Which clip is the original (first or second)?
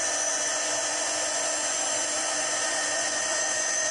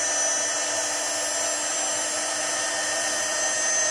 second